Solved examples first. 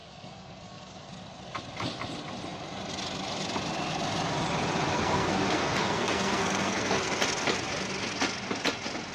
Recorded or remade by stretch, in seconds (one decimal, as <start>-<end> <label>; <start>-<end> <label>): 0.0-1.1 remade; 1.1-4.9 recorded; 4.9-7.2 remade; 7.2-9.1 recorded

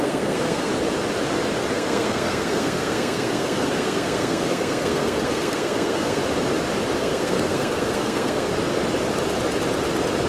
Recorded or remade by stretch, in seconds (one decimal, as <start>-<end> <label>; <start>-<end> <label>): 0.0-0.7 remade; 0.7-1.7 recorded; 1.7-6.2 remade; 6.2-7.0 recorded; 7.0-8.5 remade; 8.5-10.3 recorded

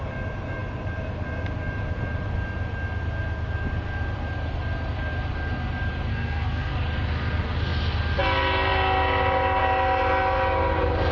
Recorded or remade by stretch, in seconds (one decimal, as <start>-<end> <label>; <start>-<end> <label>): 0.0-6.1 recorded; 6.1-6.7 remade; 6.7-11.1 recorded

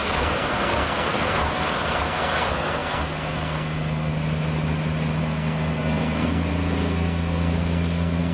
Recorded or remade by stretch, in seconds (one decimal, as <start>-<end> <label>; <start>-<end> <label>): 0.0-4.1 remade; 4.1-5.2 recorded; 5.2-8.3 remade

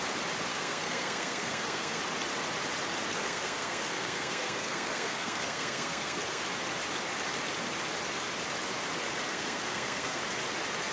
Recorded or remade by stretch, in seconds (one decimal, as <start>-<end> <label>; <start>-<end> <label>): 0.0-0.5 recorded; 0.5-2.0 remade; 2.0-3.1 recorded; 3.1-6.4 remade; 6.4-9.3 recorded; 9.3-10.2 remade; 10.2-10.9 recorded

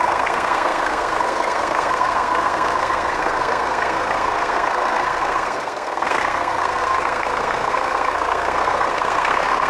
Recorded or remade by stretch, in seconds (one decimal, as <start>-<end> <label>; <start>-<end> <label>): 0.0-9.7 remade